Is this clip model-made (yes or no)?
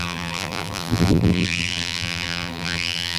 yes